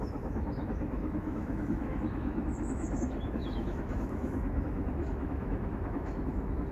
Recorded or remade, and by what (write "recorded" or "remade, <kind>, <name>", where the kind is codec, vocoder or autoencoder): remade, autoencoder, DAC-VAE